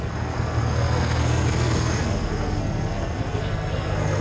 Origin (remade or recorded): remade